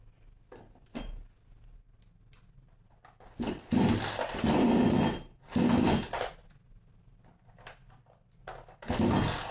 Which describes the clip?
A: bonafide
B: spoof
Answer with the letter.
A